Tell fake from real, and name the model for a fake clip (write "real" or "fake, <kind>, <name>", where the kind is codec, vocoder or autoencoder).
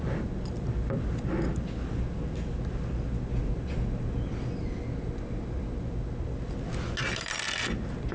real